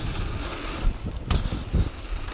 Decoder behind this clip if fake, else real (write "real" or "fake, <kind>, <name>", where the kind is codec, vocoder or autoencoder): real